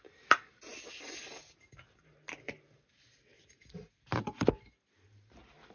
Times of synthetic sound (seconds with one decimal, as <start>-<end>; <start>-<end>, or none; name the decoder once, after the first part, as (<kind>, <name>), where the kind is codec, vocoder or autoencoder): none